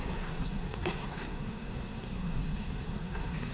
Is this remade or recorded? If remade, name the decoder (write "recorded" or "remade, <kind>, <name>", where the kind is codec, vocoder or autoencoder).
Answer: remade, codec, SNAC